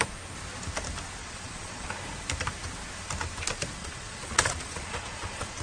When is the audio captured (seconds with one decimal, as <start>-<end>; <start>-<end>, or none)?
0.0-1.2; 1.9-3.8